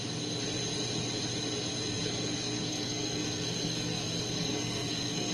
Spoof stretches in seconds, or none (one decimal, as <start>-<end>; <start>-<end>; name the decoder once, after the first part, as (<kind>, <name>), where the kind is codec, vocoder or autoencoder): 1.7-5.3 (codec, SNAC)